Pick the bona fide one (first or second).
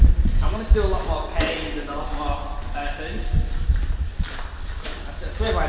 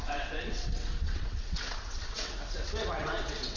first